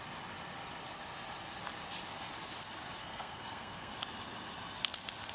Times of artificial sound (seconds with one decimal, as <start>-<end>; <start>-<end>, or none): 3.0-3.9

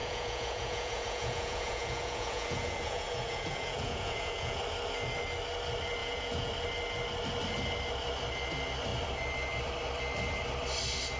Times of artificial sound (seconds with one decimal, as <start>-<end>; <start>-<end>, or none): 0.0-4.6; 6.0-6.5

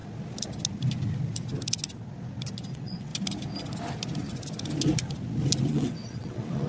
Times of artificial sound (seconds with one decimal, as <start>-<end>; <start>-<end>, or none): 2.7-3.1; 5.7-6.7

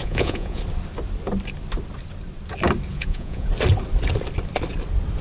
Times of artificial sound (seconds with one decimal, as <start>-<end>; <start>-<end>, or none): 0.0-0.6; 2.9-3.5

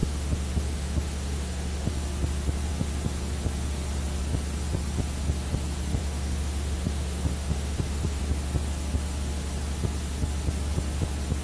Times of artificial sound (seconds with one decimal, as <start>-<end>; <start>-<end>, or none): 0.0-1.9; 6.0-8.2

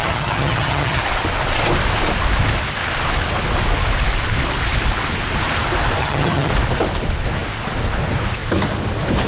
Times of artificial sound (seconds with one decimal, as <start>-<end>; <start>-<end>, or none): 0.0-1.0; 6.0-6.5

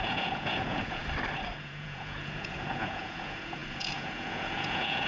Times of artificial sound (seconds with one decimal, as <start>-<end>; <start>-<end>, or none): 0.0-1.0; 1.6-5.1

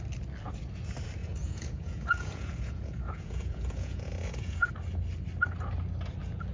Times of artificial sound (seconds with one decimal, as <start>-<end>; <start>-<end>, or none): 1.2-4.7